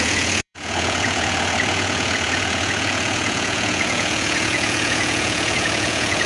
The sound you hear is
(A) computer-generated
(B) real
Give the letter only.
A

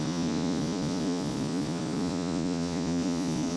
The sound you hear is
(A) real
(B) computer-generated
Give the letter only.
B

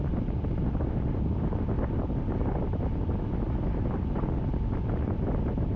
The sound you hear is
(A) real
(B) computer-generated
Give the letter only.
A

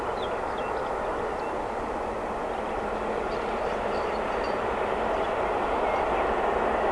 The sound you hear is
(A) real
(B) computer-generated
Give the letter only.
A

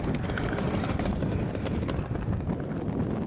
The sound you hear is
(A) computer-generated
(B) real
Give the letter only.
B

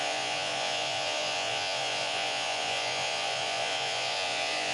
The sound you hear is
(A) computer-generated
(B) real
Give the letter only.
A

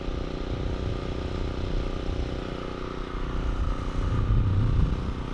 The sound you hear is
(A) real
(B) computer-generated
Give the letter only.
A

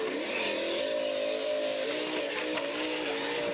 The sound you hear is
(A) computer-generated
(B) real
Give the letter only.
B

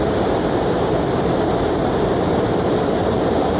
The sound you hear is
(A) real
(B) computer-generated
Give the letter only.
A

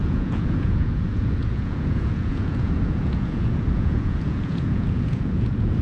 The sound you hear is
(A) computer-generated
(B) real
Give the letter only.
A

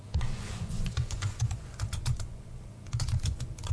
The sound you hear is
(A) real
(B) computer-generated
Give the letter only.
B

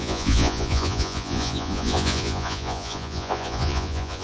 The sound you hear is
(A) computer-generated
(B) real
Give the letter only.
A